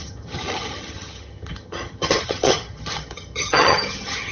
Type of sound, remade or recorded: remade